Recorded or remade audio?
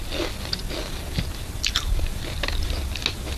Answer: recorded